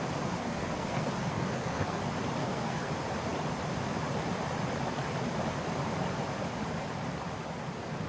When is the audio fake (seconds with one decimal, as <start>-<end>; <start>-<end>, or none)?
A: 0.4-2.0; 2.4-2.9

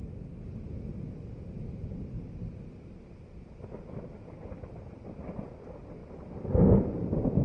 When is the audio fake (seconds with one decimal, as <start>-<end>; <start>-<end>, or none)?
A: 6.0-7.4